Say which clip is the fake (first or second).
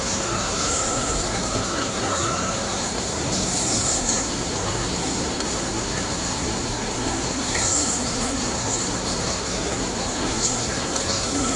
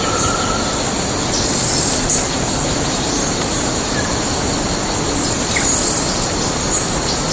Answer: first